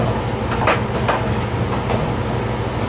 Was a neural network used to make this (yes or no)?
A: no